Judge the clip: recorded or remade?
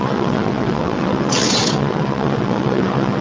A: remade